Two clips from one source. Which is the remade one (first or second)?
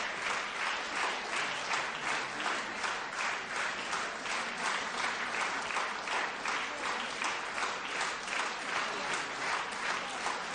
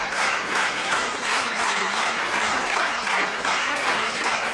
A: second